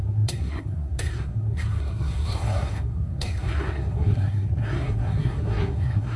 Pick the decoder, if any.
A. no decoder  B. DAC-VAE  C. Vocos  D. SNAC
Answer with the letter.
D